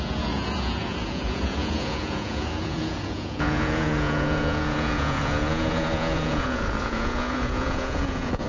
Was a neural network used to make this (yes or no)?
yes